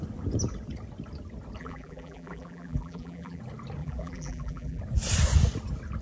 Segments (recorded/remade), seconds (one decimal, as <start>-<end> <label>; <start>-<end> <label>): 0.0-1.6 recorded; 1.6-3.4 remade; 3.4-3.8 recorded; 3.8-4.8 remade; 4.8-6.0 recorded